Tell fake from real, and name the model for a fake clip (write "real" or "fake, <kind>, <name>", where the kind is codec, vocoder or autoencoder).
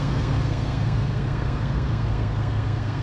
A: fake, codec, SNAC